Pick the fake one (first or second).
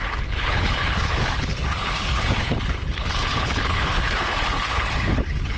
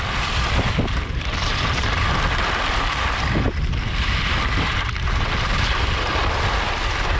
first